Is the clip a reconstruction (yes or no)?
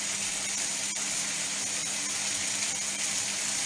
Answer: no